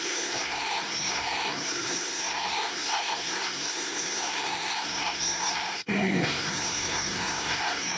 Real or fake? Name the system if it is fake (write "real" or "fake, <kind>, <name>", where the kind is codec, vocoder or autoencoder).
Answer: fake, codec, SNAC